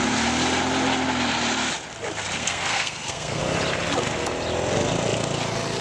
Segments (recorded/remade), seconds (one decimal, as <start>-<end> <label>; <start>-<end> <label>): 0.0-2.4 recorded; 2.4-3.4 remade; 3.4-5.8 recorded